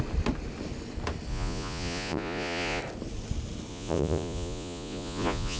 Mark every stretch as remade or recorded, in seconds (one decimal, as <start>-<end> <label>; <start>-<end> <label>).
0.0-1.3 recorded; 1.3-2.8 remade; 2.8-3.7 recorded; 3.7-5.6 remade